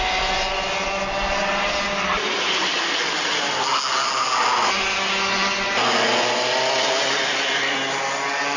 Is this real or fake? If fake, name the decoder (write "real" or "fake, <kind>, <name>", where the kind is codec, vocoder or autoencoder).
real